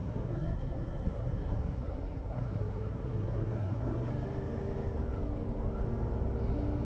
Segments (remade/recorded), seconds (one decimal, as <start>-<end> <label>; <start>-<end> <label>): 0.0-4.1 remade; 4.1-6.8 recorded